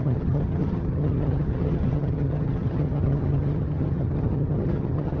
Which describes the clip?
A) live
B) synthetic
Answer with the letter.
B